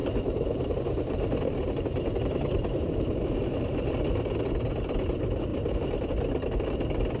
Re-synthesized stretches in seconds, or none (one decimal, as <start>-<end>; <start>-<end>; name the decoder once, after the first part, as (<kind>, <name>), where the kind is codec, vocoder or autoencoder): 0.0-3.9 (vocoder, BigVGAN v2); 5.5-6.1